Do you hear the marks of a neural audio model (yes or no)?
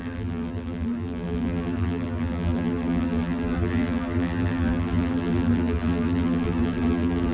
yes